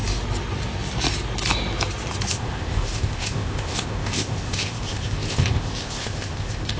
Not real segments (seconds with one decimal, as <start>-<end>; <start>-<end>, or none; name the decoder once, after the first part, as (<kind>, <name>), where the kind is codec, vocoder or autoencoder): 2.3-6.8 (codec, ZipCodec)